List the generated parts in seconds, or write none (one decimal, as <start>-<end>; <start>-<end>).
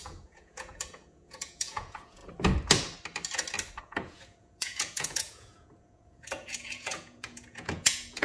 0.0-2.2; 3.8-8.2